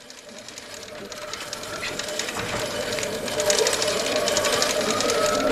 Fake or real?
fake